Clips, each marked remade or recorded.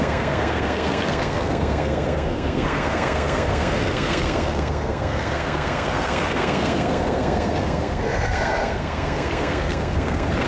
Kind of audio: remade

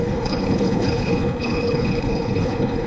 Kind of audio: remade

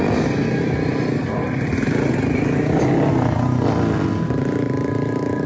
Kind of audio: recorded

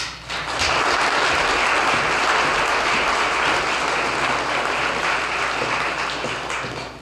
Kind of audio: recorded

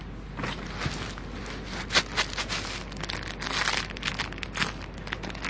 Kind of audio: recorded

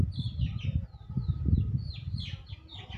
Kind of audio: recorded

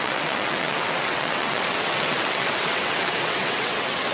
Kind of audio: remade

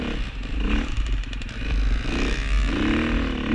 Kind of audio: recorded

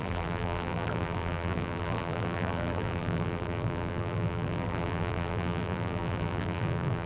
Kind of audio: remade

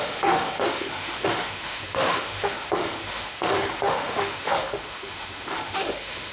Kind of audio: remade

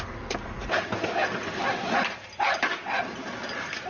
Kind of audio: remade